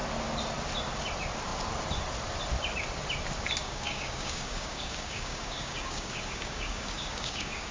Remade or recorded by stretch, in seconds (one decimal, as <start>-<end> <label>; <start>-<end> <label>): 0.0-3.6 recorded; 3.6-7.7 remade